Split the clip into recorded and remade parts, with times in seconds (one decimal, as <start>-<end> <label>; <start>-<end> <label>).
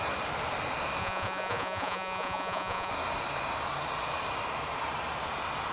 0.0-1.0 recorded; 1.0-2.9 remade; 2.9-5.7 recorded